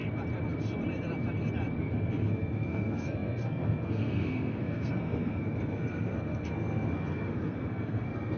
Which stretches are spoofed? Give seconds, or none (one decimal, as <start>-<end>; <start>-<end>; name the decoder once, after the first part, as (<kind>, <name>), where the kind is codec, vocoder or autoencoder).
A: 1.8-8.4 (codec, SNAC)